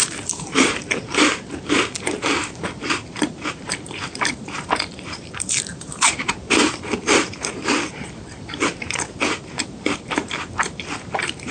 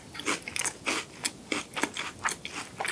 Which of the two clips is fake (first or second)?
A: first